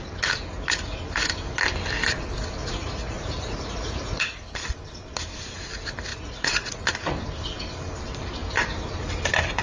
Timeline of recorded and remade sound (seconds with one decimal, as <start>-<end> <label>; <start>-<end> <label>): 0.0-2.6 recorded; 2.6-4.4 remade; 4.4-6.1 recorded; 6.1-6.9 remade; 6.9-9.6 recorded